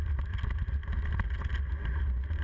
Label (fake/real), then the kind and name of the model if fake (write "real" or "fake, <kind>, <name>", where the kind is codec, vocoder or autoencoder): real